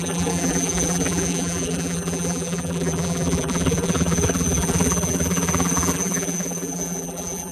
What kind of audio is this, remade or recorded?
remade